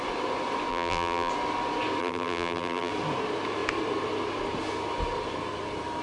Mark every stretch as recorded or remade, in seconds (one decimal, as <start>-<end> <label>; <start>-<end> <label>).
0.0-0.7 recorded; 0.7-1.3 remade; 1.3-2.0 recorded; 2.0-2.9 remade; 2.9-6.0 recorded